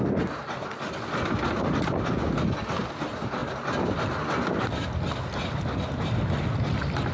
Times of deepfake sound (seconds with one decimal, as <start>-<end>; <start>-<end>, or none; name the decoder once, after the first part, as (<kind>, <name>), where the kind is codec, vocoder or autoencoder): none